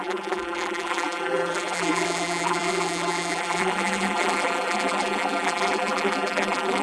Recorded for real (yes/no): no